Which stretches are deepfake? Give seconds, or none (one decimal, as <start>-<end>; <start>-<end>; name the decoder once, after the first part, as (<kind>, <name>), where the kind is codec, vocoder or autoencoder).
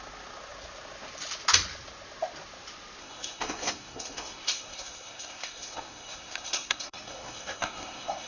3.0-8.3 (codec, SNAC)